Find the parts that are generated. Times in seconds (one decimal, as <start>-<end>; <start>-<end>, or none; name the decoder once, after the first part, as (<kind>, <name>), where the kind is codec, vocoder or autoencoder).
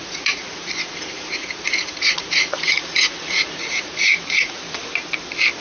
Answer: 0.0-0.7 (vocoder, Vocos); 1.4-4.8